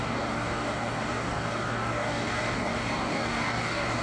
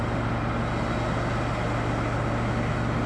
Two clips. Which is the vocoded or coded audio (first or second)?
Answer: first